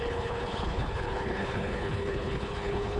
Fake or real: fake